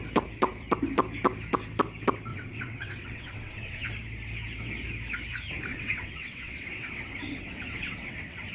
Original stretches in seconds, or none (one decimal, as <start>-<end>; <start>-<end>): 0.0-2.3; 3.9-5.7